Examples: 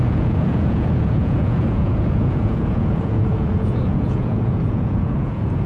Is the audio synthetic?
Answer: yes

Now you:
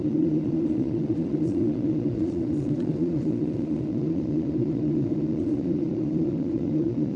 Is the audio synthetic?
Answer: yes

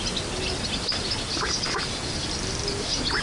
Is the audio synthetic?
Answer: no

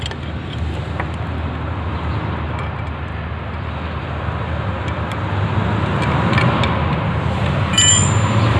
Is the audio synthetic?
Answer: no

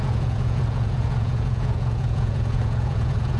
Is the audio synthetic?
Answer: yes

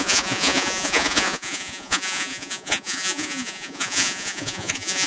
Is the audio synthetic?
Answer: yes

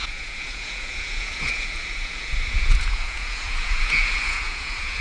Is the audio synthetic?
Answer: yes